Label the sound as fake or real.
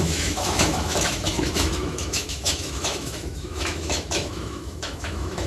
fake